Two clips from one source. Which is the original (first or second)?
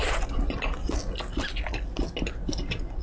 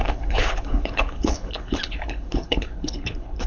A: first